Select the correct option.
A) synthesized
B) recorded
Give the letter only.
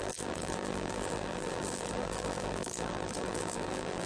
A